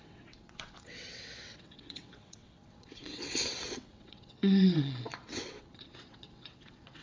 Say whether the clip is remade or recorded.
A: remade